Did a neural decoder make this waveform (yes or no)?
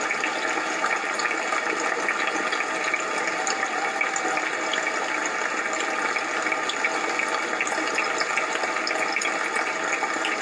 no